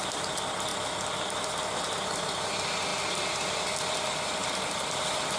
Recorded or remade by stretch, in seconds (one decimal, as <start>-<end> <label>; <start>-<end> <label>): 0.0-5.4 recorded

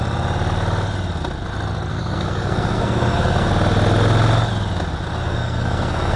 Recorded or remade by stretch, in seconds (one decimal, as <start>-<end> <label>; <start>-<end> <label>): 0.0-1.9 recorded; 1.9-3.5 remade; 3.5-5.2 recorded; 5.2-6.2 remade